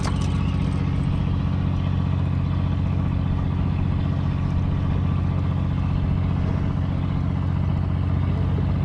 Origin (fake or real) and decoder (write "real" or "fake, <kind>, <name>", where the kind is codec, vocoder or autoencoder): real